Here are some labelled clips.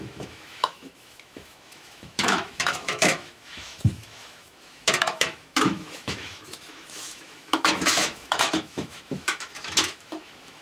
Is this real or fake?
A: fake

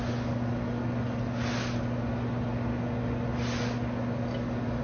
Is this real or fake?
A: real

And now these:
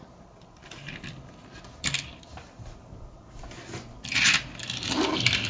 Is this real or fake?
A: real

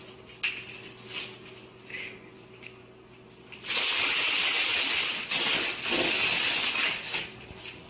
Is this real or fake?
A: real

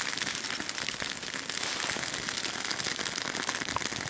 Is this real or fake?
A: real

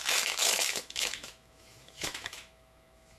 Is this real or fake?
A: fake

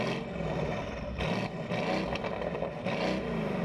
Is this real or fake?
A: real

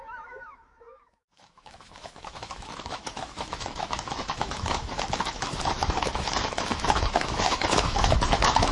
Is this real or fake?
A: fake